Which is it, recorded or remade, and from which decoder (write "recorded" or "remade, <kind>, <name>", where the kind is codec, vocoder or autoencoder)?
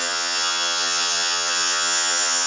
remade, vocoder, HiFi-GAN